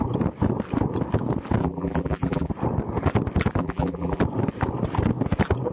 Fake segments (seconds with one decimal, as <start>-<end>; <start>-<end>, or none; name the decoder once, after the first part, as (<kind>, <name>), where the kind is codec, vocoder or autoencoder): 1.6-2.5 (vocoder, BigVGAN v2); 3.6-4.2